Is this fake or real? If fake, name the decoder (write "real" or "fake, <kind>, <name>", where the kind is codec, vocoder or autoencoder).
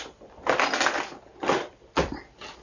real